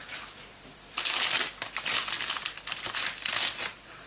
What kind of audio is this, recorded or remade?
recorded